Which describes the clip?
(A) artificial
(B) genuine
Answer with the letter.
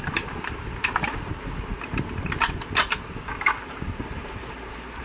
B